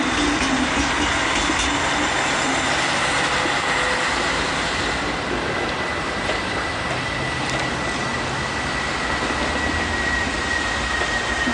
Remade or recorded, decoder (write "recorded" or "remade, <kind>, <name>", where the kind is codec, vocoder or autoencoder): recorded